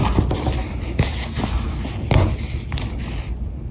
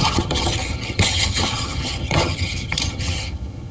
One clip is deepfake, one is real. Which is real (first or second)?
first